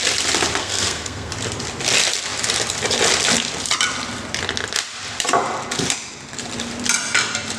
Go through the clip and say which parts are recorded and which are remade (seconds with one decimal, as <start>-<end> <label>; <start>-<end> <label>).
0.0-0.6 recorded; 0.6-1.3 remade; 1.3-7.6 recorded